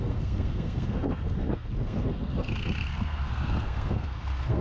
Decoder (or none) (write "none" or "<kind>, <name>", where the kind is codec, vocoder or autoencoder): codec, SNAC